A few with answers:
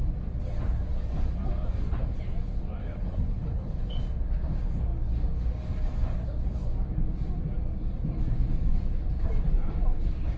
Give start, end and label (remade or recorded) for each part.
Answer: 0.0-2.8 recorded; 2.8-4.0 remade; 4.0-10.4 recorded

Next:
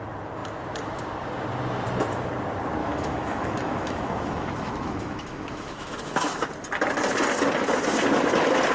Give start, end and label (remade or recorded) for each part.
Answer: 0.0-2.8 recorded; 2.8-6.4 remade; 6.4-8.7 recorded

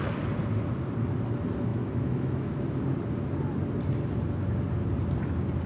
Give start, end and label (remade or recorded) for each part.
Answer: 0.0-1.7 recorded; 1.7-2.8 remade; 2.8-5.7 recorded